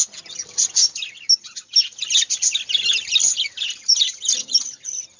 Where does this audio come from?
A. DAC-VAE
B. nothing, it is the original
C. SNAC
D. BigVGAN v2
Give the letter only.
B